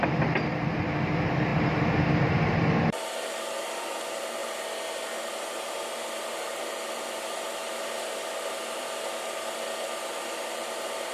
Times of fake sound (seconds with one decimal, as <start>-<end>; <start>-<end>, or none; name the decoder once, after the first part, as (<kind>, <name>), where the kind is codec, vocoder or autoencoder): 0.0-4.4 (vocoder, BigVGAN v2); 5.3-7.6; 8.3-11.1

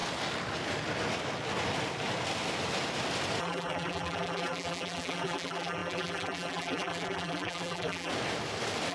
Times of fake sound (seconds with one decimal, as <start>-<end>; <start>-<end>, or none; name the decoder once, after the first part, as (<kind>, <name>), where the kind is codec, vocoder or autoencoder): 3.4-8.1 (vocoder, BigVGAN v2)

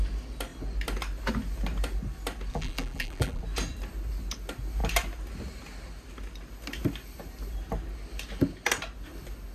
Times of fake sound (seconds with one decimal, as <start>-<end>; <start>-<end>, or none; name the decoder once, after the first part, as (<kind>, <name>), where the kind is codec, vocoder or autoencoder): 2.5-3.4 (vocoder, BigVGAN v2)

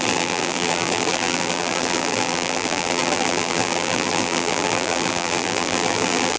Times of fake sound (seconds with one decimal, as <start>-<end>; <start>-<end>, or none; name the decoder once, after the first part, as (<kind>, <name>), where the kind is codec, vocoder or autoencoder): 0.0-6.4 (vocoder, BigVGAN v2)

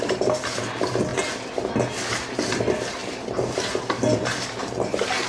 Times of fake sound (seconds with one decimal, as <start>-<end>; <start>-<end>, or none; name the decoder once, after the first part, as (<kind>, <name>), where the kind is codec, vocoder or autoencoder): none

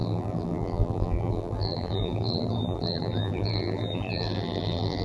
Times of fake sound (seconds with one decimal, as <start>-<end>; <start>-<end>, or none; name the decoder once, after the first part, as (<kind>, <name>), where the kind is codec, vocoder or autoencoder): 0.0-5.0 (vocoder, BigVGAN v2)